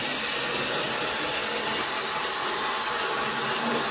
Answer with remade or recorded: recorded